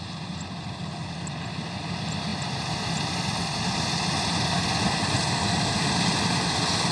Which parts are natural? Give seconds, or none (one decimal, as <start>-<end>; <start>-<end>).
0.0-6.9